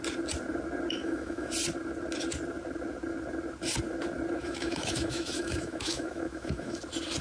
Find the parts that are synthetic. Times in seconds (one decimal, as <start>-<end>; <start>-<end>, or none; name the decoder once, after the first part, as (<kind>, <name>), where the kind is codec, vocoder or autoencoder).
1.0-1.5 (autoencoder, DAC-VAE); 4.4-6.8